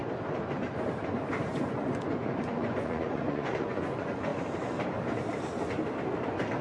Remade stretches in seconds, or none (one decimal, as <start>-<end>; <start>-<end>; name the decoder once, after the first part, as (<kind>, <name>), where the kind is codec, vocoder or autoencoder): 1.5-4.3 (vocoder, Vocos)